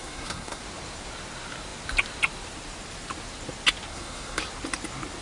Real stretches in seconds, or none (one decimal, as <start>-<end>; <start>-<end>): 0.6-3.9; 4.4-5.2